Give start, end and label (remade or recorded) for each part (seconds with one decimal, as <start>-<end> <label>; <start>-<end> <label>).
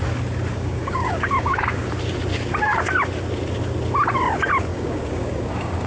0.0-0.5 recorded; 0.5-1.9 remade; 1.9-4.7 recorded; 4.7-5.9 remade